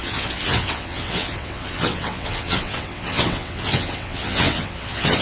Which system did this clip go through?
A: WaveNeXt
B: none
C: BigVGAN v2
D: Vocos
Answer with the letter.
A